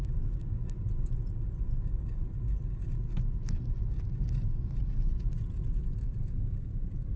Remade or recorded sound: recorded